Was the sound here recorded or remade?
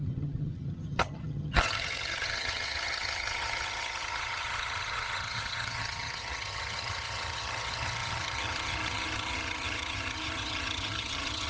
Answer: remade